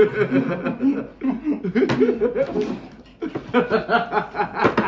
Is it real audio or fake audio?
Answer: real